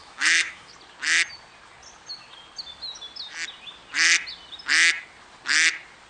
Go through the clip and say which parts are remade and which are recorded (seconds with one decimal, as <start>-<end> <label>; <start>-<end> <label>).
0.0-0.7 remade; 0.7-6.1 recorded